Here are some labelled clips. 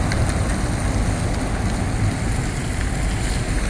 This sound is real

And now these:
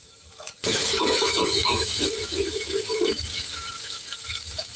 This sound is fake